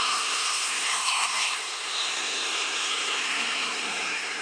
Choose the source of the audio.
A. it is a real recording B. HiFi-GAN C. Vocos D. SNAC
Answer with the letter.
D